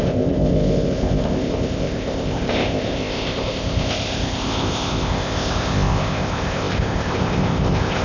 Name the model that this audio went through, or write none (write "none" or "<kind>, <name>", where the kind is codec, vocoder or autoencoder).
codec, ZipCodec